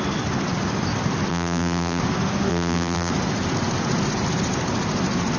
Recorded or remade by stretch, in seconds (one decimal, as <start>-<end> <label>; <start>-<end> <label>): 0.0-1.3 recorded; 1.3-2.0 remade; 2.0-2.5 recorded; 2.5-3.1 remade; 3.1-5.4 recorded